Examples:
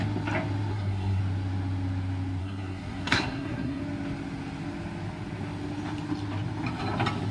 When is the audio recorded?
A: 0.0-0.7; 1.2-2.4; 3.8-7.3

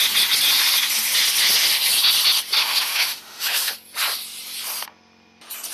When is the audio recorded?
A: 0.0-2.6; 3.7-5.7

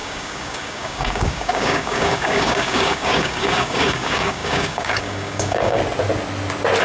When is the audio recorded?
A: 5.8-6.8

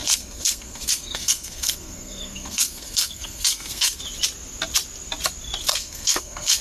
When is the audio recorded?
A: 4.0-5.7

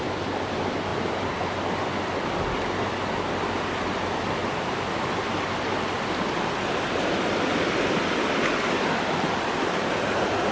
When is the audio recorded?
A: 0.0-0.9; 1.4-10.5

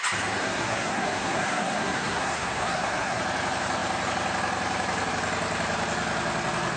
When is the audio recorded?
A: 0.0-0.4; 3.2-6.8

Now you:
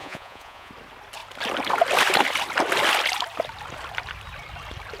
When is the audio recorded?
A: 0.7-5.0

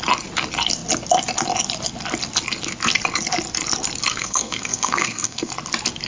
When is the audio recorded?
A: 0.0-4.1; 5.5-6.1